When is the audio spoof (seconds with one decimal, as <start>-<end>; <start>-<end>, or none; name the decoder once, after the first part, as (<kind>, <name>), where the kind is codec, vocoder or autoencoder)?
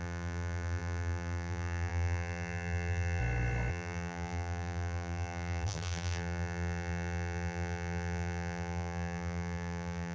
0.0-3.2 (vocoder, BigVGAN v2); 3.7-10.1